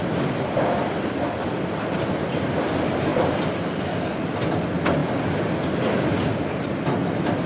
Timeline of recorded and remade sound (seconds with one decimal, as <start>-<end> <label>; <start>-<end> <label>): 0.0-3.1 recorded; 3.1-3.8 remade; 3.8-7.5 recorded